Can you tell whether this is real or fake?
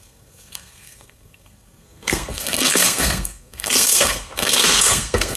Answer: fake